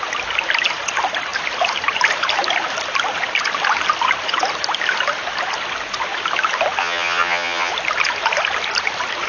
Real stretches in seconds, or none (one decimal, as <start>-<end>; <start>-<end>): 0.0-6.8; 7.7-9.3